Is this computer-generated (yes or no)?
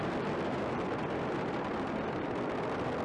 yes